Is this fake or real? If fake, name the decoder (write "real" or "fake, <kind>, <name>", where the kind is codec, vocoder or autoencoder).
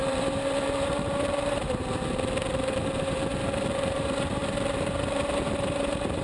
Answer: fake, vocoder, BigVGAN v2